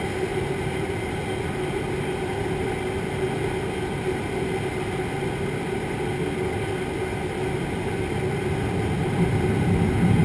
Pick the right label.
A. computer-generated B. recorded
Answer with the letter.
B